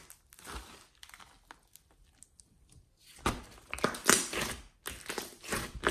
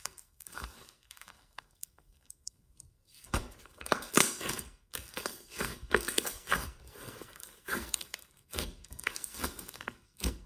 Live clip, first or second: first